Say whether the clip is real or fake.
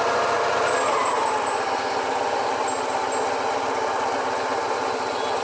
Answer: real